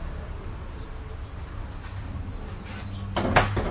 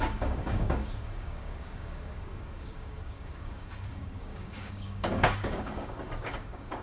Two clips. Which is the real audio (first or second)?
first